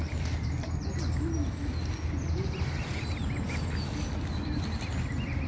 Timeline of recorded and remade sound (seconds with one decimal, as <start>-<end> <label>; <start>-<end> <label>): 0.0-5.5 recorded